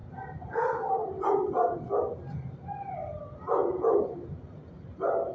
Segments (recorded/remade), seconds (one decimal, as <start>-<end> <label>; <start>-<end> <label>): 0.0-5.3 recorded